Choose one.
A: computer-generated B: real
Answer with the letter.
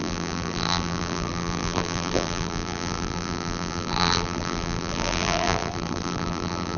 A